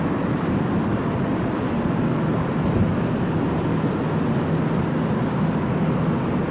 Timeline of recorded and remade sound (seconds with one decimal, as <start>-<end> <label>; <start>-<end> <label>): 0.0-6.5 recorded